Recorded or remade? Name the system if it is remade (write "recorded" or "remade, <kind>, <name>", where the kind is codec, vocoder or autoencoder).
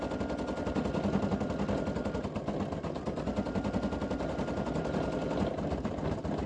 recorded